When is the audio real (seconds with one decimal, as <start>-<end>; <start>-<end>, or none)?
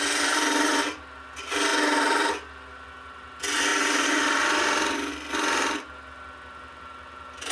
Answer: 0.0-7.5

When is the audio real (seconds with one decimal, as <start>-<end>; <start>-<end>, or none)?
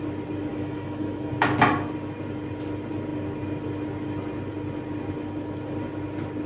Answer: 0.0-0.5; 1.3-6.5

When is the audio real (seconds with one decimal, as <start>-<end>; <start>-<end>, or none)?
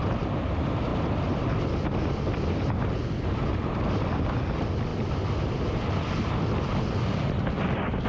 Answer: 0.0-8.1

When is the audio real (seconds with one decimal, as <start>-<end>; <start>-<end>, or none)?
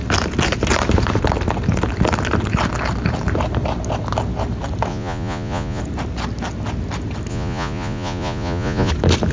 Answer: 0.0-4.9; 5.8-7.3; 8.9-9.3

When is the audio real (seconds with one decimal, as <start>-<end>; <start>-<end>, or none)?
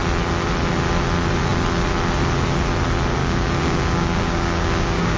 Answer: 0.0-3.2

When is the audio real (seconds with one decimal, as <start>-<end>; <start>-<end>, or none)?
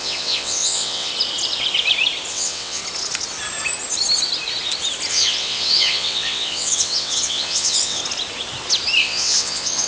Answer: 1.1-2.3; 2.8-5.1; 8.0-9.0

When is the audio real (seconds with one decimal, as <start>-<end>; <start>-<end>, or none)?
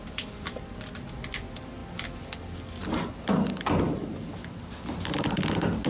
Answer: 0.0-5.9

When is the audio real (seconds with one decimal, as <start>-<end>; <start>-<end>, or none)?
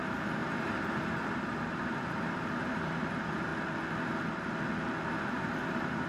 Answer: 3.5-5.3